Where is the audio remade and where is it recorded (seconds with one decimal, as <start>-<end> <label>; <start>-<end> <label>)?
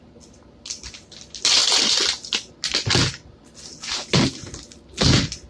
0.0-1.6 recorded; 1.6-2.1 remade; 2.1-5.5 recorded